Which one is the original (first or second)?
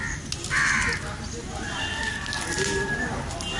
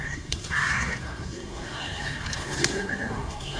first